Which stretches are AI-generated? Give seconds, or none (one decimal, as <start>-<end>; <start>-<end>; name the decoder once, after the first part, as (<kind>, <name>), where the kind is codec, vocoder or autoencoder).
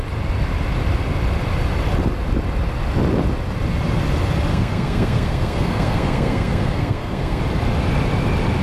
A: 4.5-7.4 (codec, SNAC)